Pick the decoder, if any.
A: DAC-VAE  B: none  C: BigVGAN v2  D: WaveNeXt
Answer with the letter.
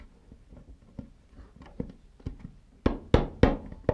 B